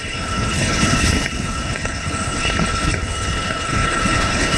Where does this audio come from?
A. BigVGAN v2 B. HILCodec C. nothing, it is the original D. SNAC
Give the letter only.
B